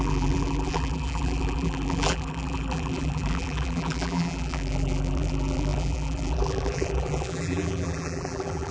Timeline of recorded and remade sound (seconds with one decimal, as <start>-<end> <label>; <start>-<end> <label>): 0.0-8.7 remade